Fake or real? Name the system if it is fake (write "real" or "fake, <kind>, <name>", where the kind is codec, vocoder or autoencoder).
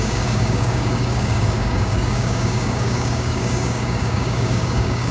fake, codec, DAC